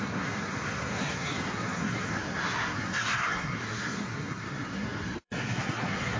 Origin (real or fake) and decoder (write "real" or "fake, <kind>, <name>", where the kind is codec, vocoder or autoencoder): fake, codec, SNAC